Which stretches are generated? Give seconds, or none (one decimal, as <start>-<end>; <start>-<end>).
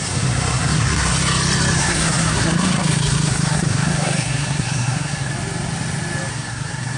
0.0-1.1; 1.8-5.3; 6.3-7.0